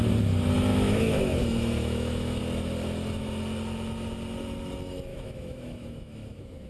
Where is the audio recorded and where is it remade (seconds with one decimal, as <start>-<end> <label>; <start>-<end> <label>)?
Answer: 0.0-0.7 recorded; 0.7-2.4 remade; 2.4-5.1 recorded; 5.1-6.7 remade

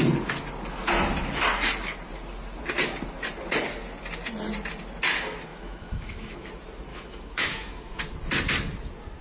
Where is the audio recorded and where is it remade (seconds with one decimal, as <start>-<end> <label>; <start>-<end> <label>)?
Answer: 0.0-5.5 recorded; 5.5-6.5 remade; 6.5-6.9 recorded; 6.9-8.0 remade; 8.0-9.2 recorded

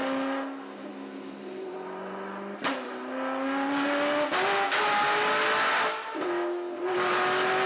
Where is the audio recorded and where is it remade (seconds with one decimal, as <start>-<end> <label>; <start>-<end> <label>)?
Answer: 0.0-7.7 recorded

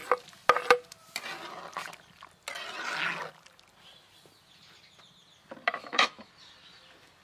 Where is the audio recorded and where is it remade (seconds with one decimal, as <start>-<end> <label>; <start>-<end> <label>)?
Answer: 0.0-5.8 recorded; 5.8-6.3 remade; 6.3-7.2 recorded

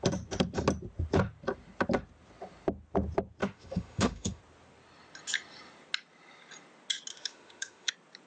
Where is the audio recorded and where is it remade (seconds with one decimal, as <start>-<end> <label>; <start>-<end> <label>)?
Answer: 0.0-3.4 recorded; 3.4-4.4 remade; 4.4-7.1 recorded; 7.1-7.9 remade; 7.9-8.3 recorded

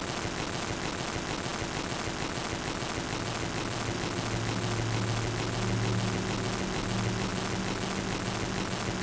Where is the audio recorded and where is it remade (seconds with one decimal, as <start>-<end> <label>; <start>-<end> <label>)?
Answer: 0.0-9.0 recorded

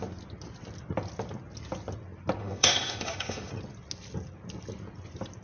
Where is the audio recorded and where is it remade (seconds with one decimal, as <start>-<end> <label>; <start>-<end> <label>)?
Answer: 0.0-2.4 recorded; 2.4-3.5 remade; 3.5-5.4 recorded